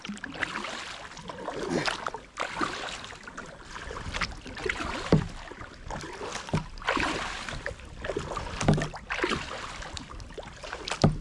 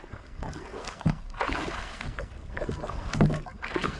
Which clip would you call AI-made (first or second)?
second